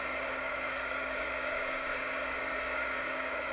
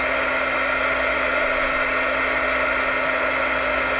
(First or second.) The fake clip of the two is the first